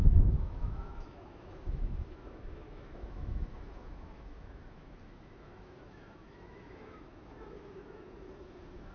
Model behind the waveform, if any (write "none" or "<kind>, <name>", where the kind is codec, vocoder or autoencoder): autoencoder, DAC-VAE